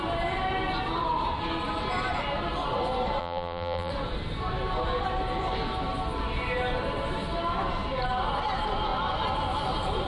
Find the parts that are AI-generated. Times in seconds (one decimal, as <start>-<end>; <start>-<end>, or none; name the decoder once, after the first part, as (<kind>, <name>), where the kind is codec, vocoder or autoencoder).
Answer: 3.2-3.9 (vocoder, BigVGAN v2)